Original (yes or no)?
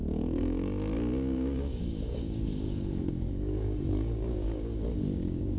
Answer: no